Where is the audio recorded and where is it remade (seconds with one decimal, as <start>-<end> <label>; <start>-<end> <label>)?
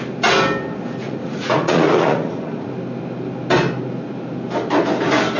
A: 0.0-1.0 recorded; 1.0-2.7 remade; 2.7-5.4 recorded